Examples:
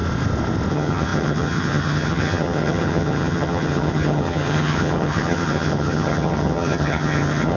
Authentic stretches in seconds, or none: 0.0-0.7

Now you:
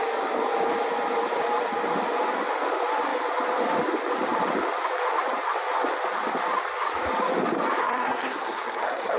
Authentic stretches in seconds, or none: 0.0-7.8